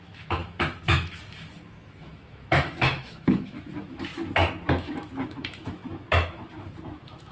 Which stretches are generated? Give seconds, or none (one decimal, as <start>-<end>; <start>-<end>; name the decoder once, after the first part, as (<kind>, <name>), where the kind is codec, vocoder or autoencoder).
0.0-4.1 (autoencoder, DAC-VAE); 4.7-7.3